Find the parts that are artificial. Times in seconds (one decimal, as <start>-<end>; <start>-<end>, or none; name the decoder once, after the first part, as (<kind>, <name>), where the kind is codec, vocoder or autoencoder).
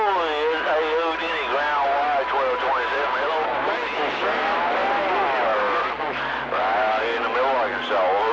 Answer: none